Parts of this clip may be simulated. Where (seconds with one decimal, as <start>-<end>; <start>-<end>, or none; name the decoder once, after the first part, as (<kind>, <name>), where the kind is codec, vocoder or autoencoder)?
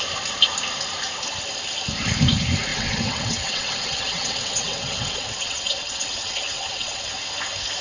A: 2.7-7.2 (vocoder, WaveNeXt)